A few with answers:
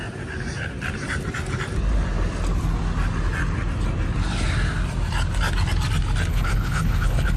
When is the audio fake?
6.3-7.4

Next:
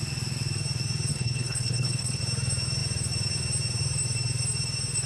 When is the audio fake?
1.1-2.2